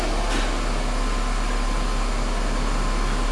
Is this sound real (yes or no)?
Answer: yes